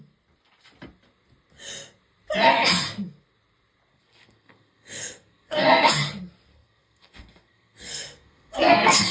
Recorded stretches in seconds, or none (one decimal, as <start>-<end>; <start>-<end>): 0.0-3.9; 5.9-6.5